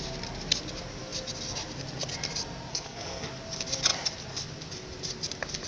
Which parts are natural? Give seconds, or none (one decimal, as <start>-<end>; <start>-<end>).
0.0-2.7; 3.3-5.7